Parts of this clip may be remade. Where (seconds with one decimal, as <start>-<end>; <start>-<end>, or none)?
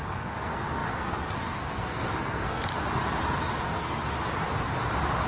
0.0-2.7; 3.6-4.0